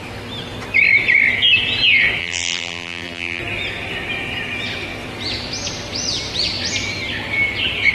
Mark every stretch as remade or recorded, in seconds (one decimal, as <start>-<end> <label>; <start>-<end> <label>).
0.0-2.2 recorded; 2.2-3.4 remade; 3.4-7.9 recorded